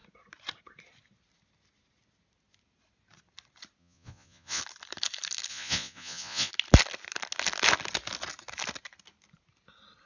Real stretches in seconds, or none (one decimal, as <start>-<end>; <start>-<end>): 0.0-3.8; 4.6-5.5; 6.5-10.1